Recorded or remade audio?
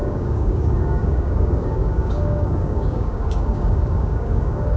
remade